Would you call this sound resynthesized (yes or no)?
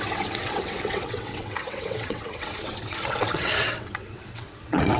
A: yes